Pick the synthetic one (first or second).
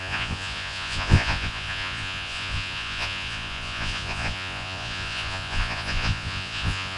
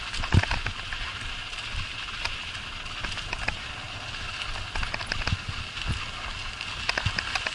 first